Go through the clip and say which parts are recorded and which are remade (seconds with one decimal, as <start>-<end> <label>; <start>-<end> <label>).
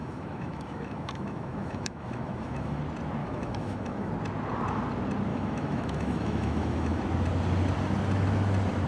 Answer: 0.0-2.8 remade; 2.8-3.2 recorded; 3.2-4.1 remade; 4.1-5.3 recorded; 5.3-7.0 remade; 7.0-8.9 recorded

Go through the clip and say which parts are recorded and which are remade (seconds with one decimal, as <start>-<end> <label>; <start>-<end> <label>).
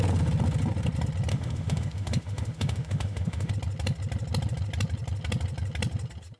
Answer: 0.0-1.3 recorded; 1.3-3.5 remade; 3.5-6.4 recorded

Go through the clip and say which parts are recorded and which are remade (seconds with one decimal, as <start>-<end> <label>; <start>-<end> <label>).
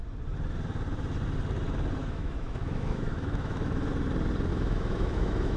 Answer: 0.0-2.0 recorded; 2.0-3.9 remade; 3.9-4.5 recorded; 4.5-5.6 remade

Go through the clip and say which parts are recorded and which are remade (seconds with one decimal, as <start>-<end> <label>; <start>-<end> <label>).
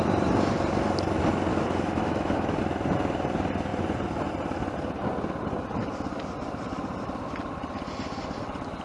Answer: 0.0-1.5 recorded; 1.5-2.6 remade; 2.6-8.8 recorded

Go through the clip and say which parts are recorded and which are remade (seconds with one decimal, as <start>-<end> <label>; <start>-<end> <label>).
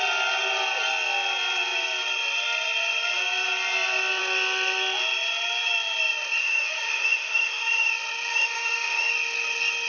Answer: 0.0-6.4 recorded; 6.4-7.9 remade; 7.9-8.3 recorded; 8.3-9.1 remade; 9.1-9.9 recorded